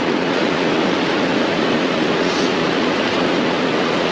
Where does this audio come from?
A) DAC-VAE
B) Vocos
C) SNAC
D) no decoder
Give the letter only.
B